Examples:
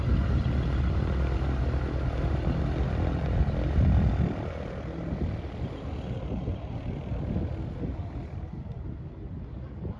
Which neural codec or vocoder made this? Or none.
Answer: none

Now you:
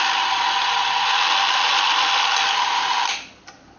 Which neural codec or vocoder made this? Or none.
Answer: none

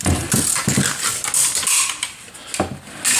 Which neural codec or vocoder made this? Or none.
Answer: none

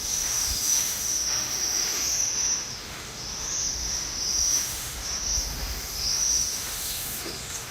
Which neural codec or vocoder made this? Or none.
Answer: autoencoder, DAC-VAE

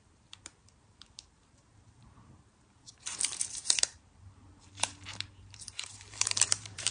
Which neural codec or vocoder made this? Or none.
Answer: vocoder, BigVGAN v2